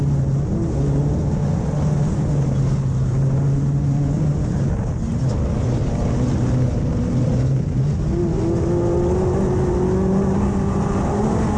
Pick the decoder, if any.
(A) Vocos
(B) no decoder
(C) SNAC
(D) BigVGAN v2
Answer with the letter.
B